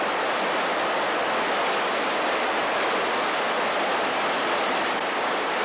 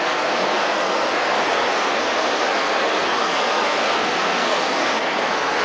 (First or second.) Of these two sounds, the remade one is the second